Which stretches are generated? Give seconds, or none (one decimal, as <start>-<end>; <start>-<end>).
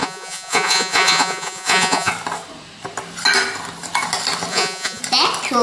0.0-2.1; 4.5-5.0